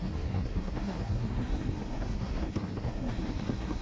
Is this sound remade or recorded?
remade